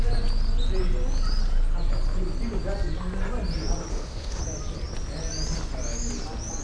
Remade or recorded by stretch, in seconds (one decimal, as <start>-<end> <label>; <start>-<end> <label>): 0.0-3.9 recorded; 3.9-4.4 remade; 4.4-6.6 recorded